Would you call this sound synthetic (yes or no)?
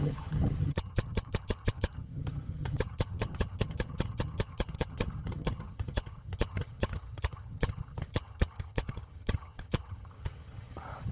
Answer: yes